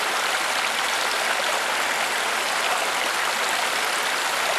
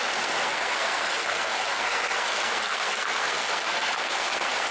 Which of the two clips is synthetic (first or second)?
second